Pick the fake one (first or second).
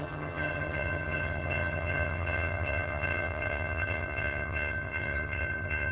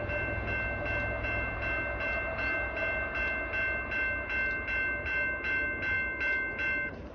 first